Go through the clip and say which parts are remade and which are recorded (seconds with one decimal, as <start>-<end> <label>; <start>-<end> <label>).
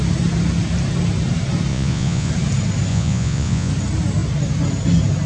0.0-1.7 recorded; 1.7-2.3 remade; 2.3-2.9 recorded; 2.9-3.7 remade; 3.7-5.3 recorded